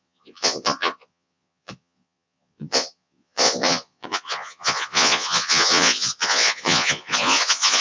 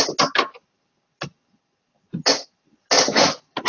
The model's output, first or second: first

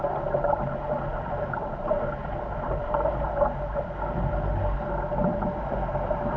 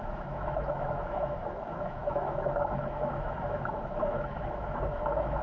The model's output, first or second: second